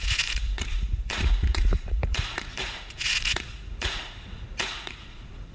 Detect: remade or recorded remade